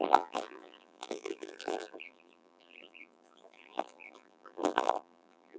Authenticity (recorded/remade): remade